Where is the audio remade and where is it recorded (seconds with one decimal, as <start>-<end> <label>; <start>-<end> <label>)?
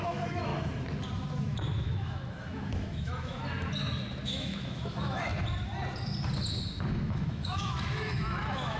0.0-0.5 remade; 0.5-1.4 recorded; 1.4-3.4 remade; 3.4-4.2 recorded; 4.2-5.3 remade; 5.3-6.9 recorded; 6.9-8.8 remade